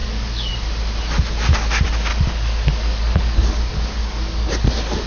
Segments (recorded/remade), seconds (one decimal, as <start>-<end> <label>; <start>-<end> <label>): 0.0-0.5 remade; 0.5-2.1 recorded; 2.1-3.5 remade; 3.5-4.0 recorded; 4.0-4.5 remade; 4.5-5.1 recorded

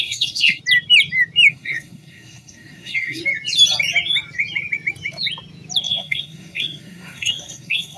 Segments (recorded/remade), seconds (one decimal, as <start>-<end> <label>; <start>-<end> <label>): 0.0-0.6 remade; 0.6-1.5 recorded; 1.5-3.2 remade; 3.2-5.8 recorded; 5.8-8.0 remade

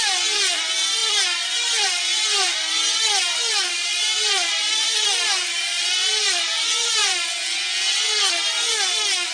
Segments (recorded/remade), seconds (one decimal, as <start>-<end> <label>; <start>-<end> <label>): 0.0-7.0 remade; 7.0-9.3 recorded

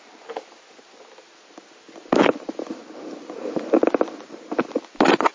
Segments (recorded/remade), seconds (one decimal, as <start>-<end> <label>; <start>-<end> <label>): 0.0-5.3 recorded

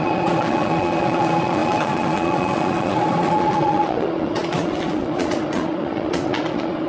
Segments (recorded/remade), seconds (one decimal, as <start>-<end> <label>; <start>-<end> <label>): 0.0-6.9 remade

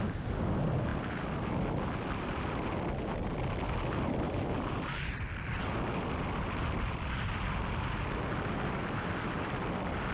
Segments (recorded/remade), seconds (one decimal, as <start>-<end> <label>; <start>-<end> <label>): 0.0-10.1 recorded